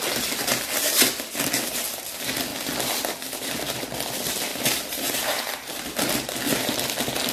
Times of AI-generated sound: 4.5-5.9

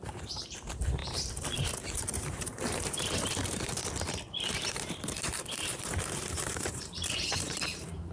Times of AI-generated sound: 0.0-3.8; 4.7-8.1